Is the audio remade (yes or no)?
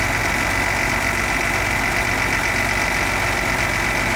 no